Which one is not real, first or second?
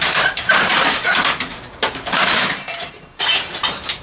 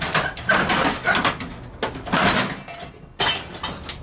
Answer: first